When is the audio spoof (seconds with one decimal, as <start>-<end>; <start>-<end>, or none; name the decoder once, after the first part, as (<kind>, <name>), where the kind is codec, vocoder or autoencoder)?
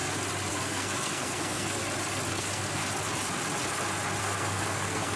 0.5-1.8 (codec, SNAC); 2.3-2.8; 4.2-5.2